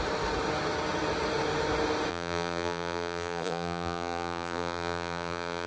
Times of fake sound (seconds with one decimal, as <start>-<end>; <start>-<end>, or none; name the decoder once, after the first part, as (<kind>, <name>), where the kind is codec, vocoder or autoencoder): 2.1-5.7 (vocoder, BigVGAN v2)